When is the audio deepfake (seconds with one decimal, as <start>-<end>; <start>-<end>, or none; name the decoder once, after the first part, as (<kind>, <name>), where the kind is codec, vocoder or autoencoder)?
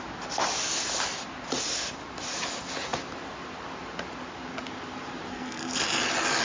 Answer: 5.3-5.8 (codec, SNAC)